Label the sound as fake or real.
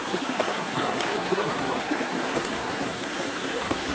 fake